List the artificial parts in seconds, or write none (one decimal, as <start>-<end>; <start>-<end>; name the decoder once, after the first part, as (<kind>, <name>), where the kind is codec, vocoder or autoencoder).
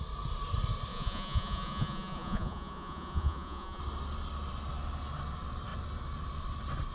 0.9-3.8 (vocoder, Vocos)